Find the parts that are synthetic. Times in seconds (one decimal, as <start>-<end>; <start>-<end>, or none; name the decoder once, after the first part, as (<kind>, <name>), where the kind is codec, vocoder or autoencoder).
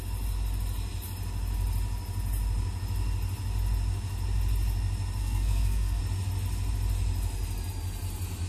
5.2-6.0 (codec, SNAC)